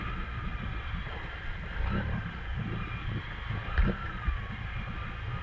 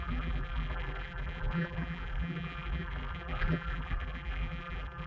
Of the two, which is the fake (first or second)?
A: second